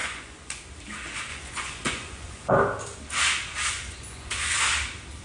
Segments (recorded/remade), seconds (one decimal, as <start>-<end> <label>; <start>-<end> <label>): 0.0-0.6 remade; 0.6-1.3 recorded; 1.3-2.5 remade; 2.5-3.7 recorded; 3.7-4.5 remade; 4.5-5.2 recorded